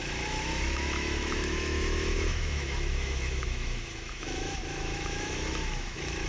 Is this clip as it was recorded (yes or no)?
no